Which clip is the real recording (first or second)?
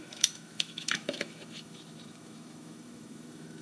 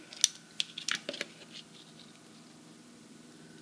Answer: second